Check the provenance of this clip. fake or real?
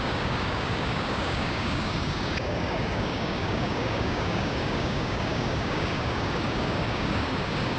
fake